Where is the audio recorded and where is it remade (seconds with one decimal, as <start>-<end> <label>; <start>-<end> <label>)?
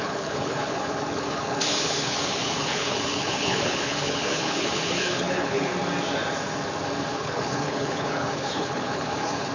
0.0-5.7 remade; 5.7-7.1 recorded; 7.1-9.5 remade